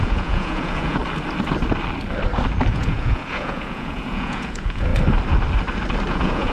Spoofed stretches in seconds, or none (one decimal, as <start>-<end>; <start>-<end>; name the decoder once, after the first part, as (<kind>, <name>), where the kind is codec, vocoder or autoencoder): 0.0-1.0 (vocoder, Vocos); 2.7-4.9; 6.1-6.5